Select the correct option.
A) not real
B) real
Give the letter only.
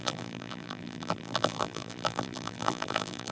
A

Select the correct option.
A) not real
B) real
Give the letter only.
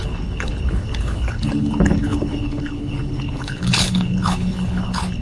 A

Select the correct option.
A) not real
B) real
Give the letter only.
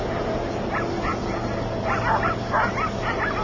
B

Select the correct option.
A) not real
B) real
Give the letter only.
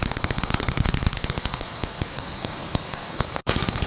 A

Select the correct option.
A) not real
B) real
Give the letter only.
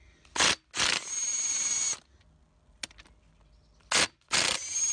B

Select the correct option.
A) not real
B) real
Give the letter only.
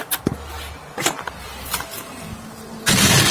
B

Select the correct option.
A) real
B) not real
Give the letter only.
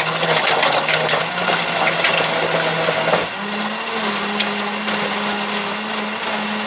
A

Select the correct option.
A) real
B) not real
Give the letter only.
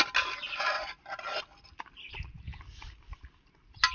A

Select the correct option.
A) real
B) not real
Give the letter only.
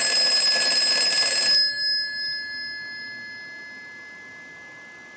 A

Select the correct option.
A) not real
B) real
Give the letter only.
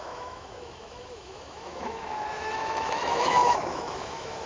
A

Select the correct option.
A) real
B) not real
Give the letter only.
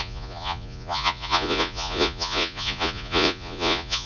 B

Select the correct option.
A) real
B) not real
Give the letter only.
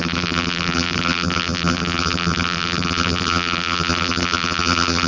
B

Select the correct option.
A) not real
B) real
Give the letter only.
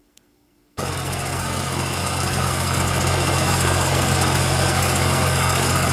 A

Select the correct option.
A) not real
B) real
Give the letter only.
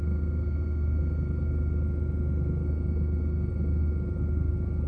B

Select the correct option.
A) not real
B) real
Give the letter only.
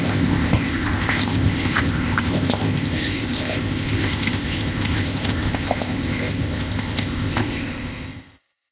A